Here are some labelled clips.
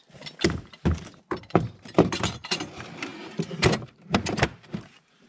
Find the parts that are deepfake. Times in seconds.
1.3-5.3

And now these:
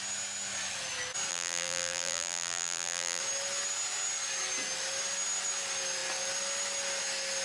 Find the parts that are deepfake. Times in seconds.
1.3-3.2

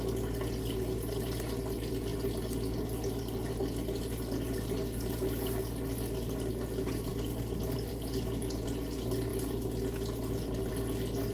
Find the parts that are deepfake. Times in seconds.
none

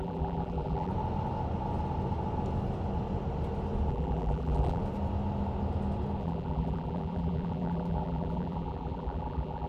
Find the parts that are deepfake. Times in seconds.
0.0-0.9; 3.9-4.8; 6.2-9.7

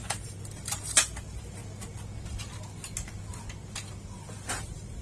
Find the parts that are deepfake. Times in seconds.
0.0-1.6; 4.0-5.0

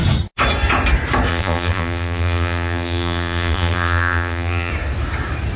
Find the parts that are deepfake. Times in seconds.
1.3-4.7

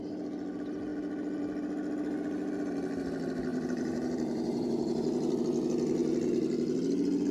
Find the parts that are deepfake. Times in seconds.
3.5-5.4

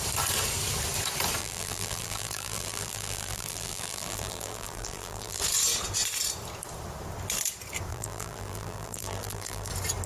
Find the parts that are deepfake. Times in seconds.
1.4-5.4; 7.9-9.7